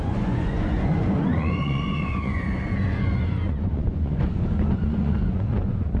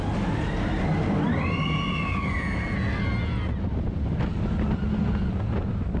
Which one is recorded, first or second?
second